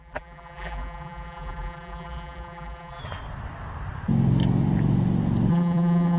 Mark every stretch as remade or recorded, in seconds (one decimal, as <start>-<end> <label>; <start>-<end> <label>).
0.0-3.0 remade; 3.0-5.5 recorded; 5.5-6.2 remade